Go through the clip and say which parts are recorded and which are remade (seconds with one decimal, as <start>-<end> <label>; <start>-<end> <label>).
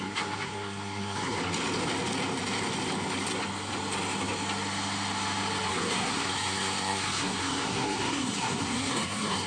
0.0-1.4 remade; 1.4-5.7 recorded; 5.7-9.5 remade